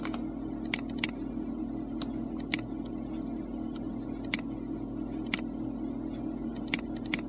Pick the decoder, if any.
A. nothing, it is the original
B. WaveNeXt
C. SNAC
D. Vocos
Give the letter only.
A